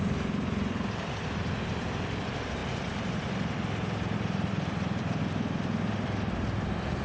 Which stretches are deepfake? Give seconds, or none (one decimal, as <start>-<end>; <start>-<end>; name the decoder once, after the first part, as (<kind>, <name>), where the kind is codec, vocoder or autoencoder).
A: 0.0-7.0 (vocoder, BigVGAN v2)